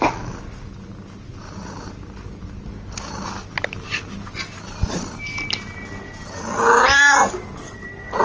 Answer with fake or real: real